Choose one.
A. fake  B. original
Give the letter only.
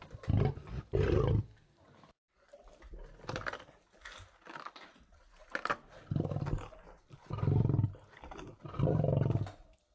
B